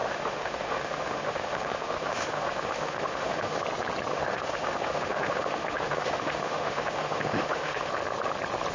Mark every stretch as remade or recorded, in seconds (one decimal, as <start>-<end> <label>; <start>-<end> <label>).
0.0-3.6 remade; 3.6-4.1 recorded; 4.1-7.9 remade; 7.9-8.7 recorded